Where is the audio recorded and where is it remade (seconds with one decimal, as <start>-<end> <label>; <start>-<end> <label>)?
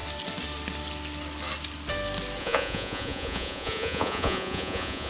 0.0-2.4 recorded; 2.4-5.1 remade